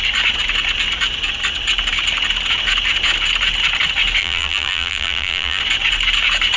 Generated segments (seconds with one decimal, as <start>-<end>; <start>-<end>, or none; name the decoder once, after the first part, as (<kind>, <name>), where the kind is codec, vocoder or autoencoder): 4.2-5.6 (vocoder, BigVGAN v2)